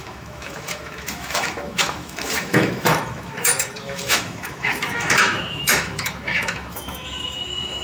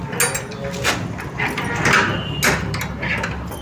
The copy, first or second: first